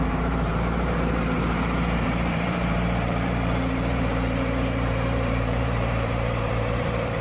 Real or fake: fake